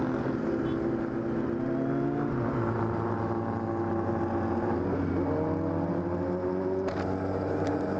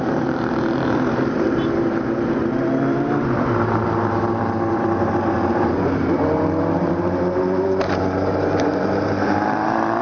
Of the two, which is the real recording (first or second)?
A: first